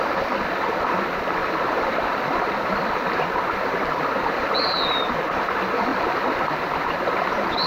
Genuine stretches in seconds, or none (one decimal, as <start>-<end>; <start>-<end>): 0.0-1.4; 5.1-5.9; 7.2-7.7